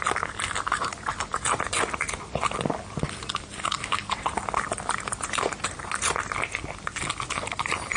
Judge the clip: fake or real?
real